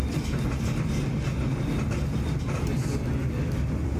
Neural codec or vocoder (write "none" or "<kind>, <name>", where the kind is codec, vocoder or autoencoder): none